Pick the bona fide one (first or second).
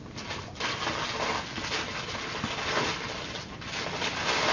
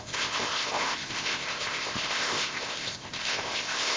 first